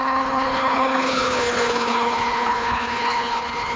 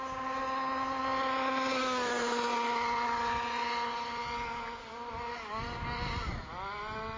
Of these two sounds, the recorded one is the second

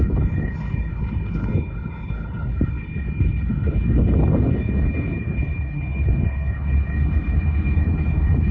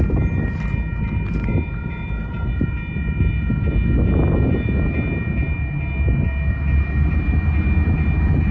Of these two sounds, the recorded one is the second